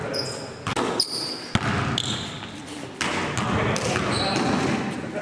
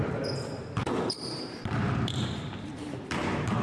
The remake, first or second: second